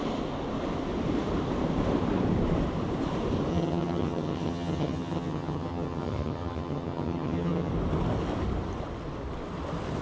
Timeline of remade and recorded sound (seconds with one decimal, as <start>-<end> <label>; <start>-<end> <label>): 0.0-3.5 recorded; 3.5-7.7 remade; 7.7-10.0 recorded